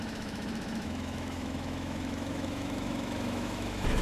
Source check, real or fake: fake